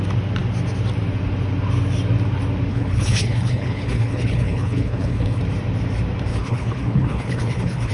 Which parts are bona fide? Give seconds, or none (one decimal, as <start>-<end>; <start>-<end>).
0.0-2.7; 5.4-6.3